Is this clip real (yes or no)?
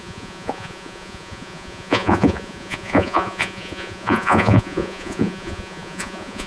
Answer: no